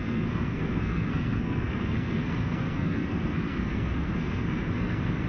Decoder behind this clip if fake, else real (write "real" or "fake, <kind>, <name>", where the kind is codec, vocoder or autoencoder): fake, codec, SNAC